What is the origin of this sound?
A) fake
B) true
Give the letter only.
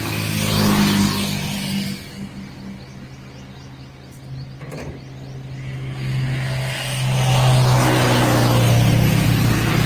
B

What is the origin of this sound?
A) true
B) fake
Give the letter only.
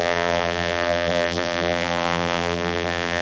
B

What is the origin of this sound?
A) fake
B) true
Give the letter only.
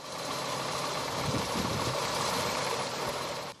A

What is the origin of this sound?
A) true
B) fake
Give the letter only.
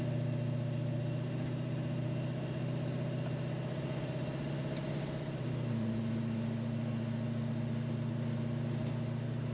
A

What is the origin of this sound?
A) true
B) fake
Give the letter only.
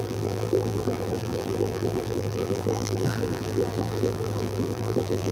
B